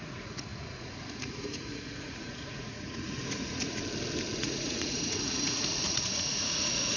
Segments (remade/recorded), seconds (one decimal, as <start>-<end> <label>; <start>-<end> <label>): 0.0-3.8 remade; 3.8-4.4 recorded; 4.4-7.0 remade